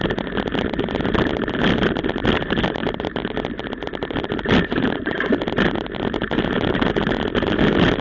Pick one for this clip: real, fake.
real